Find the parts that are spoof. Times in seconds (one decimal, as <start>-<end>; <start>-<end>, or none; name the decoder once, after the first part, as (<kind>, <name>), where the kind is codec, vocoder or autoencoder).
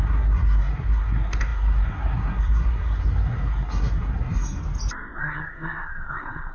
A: 0.0-4.6 (codec, SNAC); 5.2-6.5